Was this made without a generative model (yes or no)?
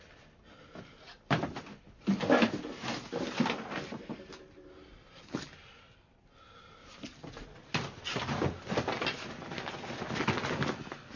yes